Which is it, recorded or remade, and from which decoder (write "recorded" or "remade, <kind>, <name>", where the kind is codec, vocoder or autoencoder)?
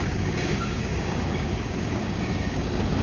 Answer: remade, codec, DAC